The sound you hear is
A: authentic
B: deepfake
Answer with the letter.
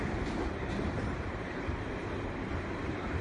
B